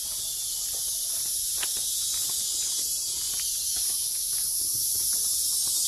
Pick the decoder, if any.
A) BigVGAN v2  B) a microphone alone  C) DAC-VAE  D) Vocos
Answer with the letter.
B